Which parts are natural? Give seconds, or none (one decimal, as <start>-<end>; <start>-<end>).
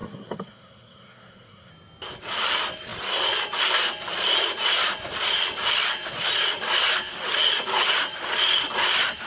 1.7-9.3